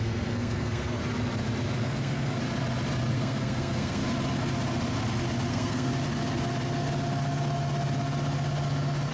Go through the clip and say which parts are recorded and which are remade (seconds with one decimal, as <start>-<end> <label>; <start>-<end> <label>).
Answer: 0.0-1.0 remade; 1.0-1.8 recorded; 1.8-2.4 remade; 2.4-3.1 recorded; 3.1-4.0 remade; 4.0-5.5 recorded; 5.5-5.9 remade; 5.9-9.1 recorded